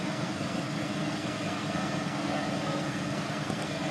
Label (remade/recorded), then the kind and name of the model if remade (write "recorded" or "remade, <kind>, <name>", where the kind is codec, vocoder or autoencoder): remade, codec, SNAC